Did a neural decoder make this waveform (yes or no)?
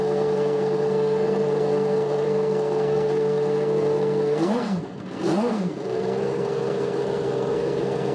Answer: yes